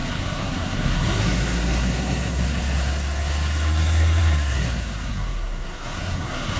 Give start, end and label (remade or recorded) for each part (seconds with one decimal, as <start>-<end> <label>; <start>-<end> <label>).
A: 0.0-6.6 remade